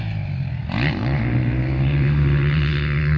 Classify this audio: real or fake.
real